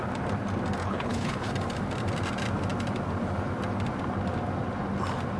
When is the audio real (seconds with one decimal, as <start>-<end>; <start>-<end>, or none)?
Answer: 0.0-0.8; 1.5-5.4